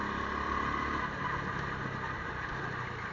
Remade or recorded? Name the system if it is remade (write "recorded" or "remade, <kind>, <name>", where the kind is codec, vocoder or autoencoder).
recorded